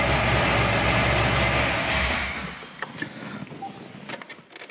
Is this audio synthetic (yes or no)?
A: no